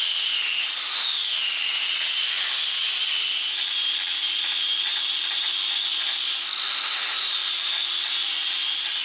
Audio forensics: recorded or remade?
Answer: remade